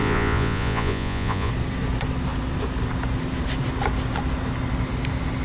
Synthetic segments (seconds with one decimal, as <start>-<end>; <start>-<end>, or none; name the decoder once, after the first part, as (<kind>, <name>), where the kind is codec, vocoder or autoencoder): 0.0-1.5 (vocoder, Vocos)